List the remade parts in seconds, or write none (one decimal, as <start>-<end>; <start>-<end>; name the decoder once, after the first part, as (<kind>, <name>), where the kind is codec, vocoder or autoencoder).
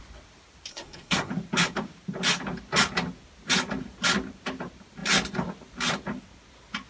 0.7-1.3 (codec, SNAC)